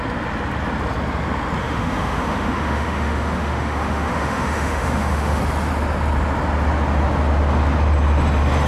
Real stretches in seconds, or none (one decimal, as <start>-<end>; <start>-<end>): 0.0-1.6; 5.4-8.7